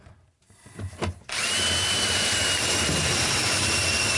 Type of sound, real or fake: fake